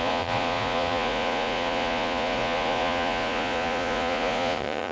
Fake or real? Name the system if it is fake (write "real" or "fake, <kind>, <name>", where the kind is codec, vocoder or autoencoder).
fake, vocoder, Vocos